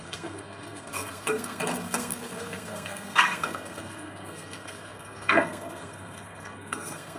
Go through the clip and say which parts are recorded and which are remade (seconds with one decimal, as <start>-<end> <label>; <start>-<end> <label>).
0.0-7.2 remade